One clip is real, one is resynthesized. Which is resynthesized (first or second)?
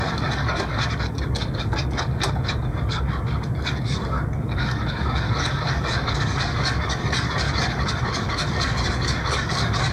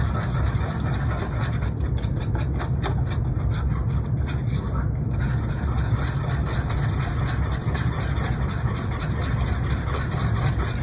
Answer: first